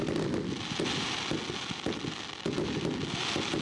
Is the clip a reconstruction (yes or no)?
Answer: no